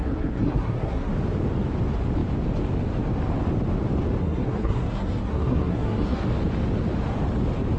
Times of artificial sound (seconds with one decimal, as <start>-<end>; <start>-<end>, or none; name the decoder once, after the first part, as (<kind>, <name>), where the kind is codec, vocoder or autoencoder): 0.0-1.1 (codec, SNAC); 4.2-6.2